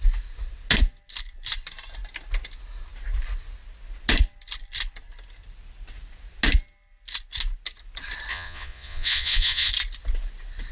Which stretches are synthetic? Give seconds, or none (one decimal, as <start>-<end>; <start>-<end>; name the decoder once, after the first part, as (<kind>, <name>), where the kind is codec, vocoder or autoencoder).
8.3-9.7 (vocoder, Vocos)